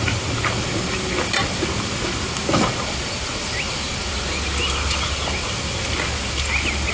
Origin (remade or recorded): recorded